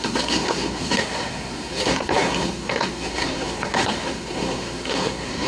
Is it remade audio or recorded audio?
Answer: remade